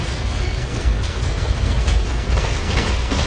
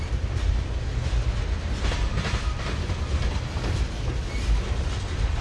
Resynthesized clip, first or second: first